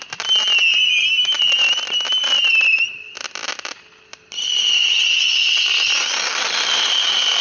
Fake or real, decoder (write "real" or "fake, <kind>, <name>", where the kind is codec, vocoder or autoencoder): real